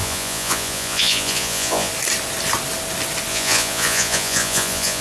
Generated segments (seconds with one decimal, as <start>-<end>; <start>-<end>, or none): 0.0-1.9; 3.3-5.0

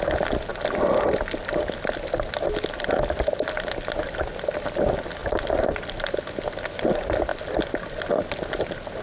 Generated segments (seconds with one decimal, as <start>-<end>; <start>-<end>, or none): none

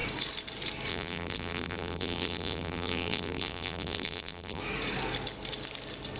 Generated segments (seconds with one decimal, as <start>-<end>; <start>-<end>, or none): 0.9-4.6

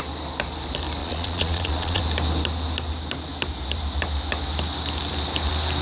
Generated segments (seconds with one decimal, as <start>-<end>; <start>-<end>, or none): 1.0-2.0

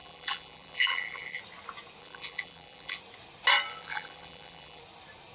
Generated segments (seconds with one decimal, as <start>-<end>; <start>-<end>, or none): 0.0-1.4; 2.0-3.0; 3.7-4.8

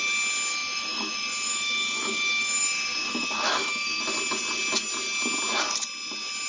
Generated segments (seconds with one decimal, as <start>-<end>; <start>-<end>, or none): 0.5-4.0